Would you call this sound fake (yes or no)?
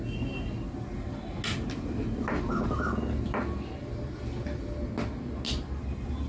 no